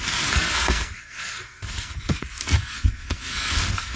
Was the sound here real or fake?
fake